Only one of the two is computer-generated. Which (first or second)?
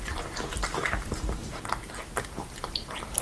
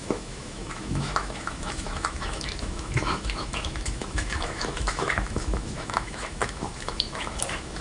second